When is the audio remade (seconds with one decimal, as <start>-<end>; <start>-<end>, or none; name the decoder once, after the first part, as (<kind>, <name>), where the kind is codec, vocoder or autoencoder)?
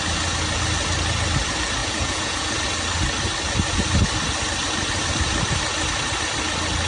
1.8-2.5 (vocoder, Vocos)